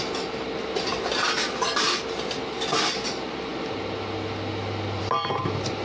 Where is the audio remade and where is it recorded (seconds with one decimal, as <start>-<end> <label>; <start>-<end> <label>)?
0.0-5.8 recorded